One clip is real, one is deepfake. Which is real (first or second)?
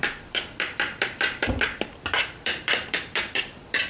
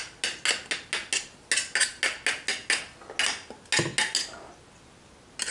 second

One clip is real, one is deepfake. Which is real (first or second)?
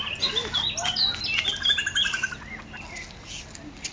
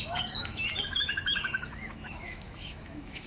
first